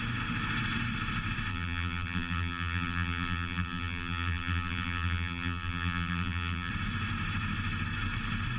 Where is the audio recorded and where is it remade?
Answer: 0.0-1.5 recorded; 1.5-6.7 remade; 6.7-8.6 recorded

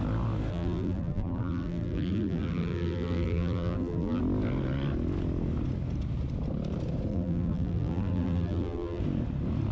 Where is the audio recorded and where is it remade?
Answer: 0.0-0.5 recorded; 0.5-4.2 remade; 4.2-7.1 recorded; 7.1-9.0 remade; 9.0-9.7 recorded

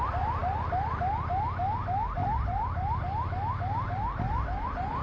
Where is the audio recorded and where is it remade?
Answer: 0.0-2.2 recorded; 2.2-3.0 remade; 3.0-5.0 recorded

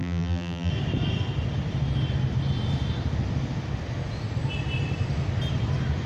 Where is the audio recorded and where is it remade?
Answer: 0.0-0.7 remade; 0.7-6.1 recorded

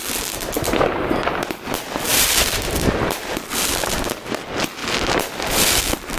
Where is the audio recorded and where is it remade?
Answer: 0.0-2.1 recorded; 2.1-3.3 remade; 3.3-4.8 recorded; 4.8-5.8 remade; 5.8-6.2 recorded

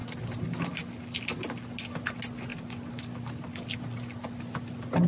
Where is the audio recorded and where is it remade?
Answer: 0.0-5.1 recorded

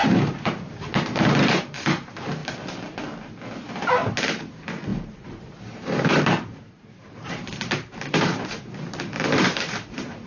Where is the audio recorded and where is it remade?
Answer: 0.0-2.4 remade; 2.4-4.1 recorded; 4.1-10.3 remade

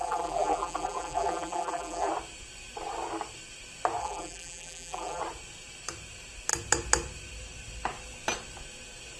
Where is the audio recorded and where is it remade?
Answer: 0.0-2.1 remade; 2.1-4.0 recorded; 4.0-5.2 remade; 5.2-9.2 recorded